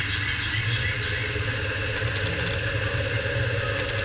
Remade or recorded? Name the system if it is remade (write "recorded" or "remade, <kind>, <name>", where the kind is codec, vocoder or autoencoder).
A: recorded